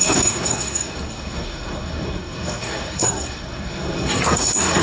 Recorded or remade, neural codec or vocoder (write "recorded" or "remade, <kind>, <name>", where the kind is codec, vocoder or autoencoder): remade, codec, SNAC